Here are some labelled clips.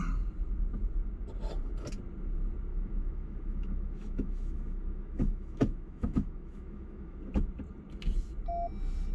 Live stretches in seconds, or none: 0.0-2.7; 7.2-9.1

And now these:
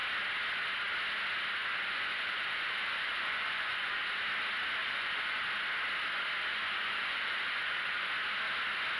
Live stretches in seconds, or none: 0.0-1.6; 4.0-4.8; 5.4-6.5; 8.1-9.0

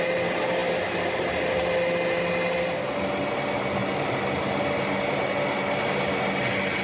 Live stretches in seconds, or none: 0.0-6.8